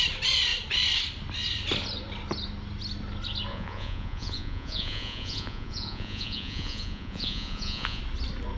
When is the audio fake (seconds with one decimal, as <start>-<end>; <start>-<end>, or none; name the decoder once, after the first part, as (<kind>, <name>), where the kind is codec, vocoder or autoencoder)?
3.5-8.0 (vocoder, Vocos)